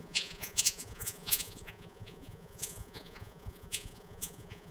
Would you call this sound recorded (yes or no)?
no